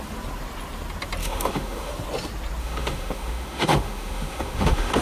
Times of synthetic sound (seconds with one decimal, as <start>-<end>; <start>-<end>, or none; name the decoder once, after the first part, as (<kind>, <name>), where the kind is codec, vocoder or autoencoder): 1.2-1.9 (autoencoder, DAC-VAE); 2.6-5.0